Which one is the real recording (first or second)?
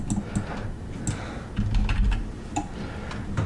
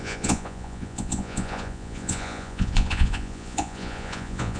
first